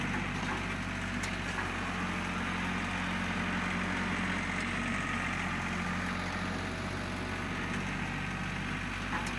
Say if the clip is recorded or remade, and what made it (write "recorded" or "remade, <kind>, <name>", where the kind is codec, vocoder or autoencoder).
recorded